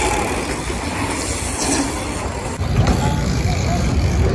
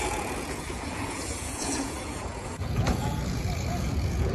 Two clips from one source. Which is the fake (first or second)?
second